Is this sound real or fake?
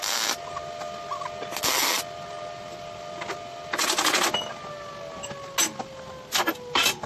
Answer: real